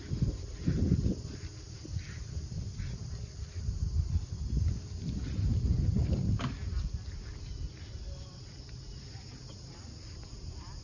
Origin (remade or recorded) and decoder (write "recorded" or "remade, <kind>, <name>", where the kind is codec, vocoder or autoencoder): recorded